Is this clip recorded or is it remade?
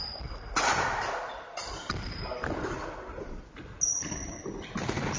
recorded